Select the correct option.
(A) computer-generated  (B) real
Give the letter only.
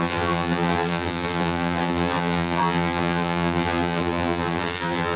A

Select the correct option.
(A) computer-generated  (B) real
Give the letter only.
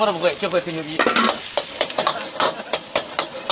B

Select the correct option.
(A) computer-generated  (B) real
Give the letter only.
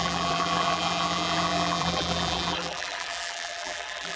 A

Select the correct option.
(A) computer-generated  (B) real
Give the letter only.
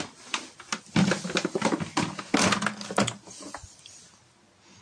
B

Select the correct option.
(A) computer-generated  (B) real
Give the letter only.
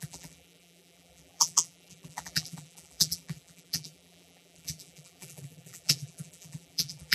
A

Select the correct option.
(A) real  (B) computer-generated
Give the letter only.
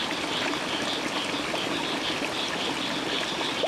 A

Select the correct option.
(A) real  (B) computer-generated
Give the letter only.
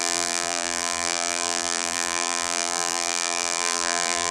B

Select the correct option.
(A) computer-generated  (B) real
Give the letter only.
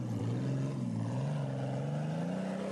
B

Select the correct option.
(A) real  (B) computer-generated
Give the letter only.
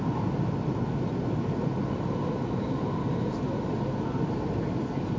A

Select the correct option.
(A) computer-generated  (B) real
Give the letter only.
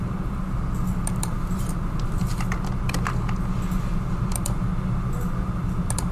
B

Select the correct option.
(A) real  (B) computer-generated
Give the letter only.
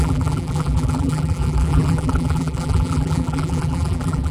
B